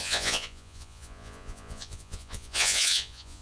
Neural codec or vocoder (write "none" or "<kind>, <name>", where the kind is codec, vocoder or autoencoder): vocoder, Vocos